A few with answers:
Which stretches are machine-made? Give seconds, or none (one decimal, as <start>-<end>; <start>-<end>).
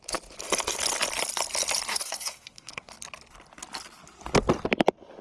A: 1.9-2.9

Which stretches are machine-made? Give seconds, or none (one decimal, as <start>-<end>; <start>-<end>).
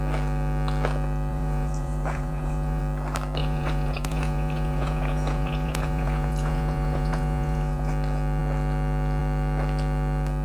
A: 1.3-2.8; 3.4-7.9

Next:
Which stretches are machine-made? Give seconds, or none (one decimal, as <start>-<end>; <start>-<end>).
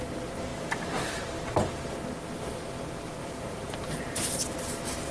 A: 0.5-1.8; 3.2-4.4